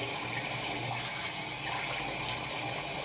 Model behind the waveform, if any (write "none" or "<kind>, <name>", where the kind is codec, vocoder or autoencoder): none